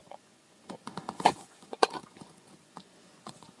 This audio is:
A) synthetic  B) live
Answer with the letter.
A